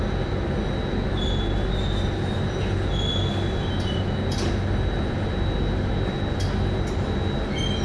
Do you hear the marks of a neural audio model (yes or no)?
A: no